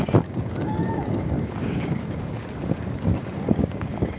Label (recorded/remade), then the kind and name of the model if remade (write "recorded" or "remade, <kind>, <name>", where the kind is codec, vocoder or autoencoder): remade, codec, DAC